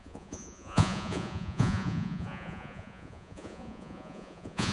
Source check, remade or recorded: remade